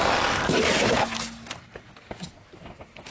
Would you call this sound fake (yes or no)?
no